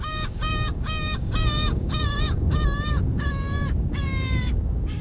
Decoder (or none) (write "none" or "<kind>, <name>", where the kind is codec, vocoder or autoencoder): codec, DAC